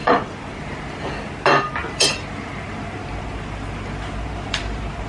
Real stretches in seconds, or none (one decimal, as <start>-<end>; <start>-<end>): 1.0-1.8

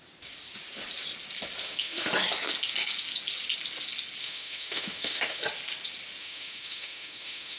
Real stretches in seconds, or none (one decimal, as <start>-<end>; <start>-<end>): 0.0-1.6; 2.1-4.2; 5.4-6.2

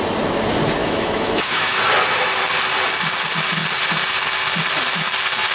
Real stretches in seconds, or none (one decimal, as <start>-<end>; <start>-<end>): 0.0-0.8; 1.8-5.5

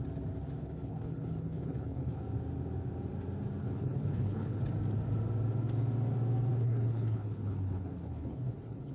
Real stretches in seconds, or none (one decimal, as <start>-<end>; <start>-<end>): 0.0-0.6; 2.2-3.6; 4.6-6.5

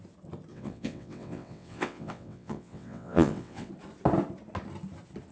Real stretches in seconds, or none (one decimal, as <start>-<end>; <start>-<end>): 0.0-0.5; 3.7-5.3

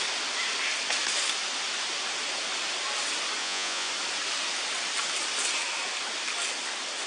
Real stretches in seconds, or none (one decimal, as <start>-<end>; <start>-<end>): 0.0-3.4; 3.9-7.1

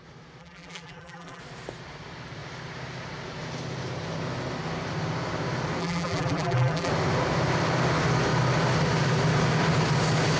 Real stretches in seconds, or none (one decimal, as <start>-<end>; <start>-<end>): 0.0-0.4; 1.4-5.8; 6.9-10.4

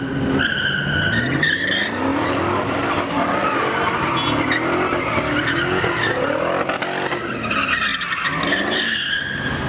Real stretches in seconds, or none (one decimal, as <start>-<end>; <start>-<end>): 0.0-9.7